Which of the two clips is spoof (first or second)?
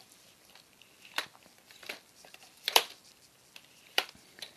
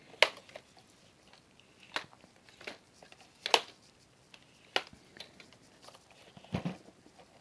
first